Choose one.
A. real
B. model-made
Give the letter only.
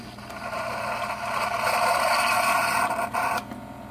A